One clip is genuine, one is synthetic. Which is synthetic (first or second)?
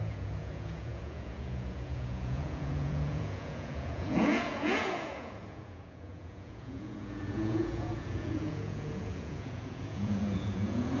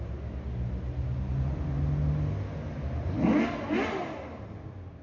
first